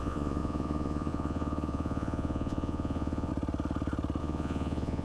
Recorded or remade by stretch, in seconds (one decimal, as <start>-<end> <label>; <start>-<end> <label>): 0.0-3.3 remade; 3.3-4.2 recorded; 4.2-5.0 remade